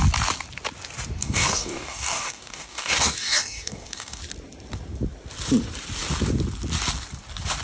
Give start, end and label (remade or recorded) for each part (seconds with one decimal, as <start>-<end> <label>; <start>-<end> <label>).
0.0-1.2 recorded; 1.2-4.2 remade; 4.2-7.6 recorded